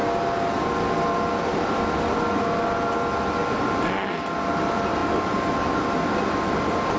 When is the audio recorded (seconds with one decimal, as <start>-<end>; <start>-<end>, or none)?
0.0-7.0